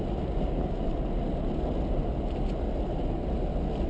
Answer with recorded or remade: recorded